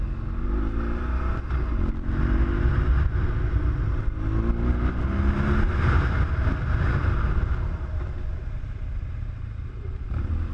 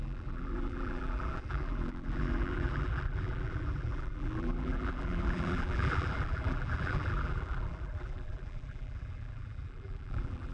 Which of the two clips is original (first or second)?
first